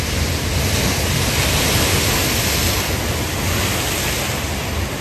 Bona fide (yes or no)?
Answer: yes